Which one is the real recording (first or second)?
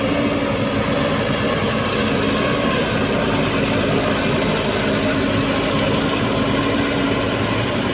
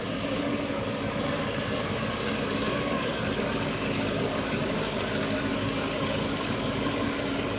first